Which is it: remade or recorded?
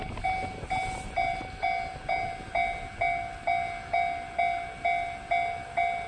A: recorded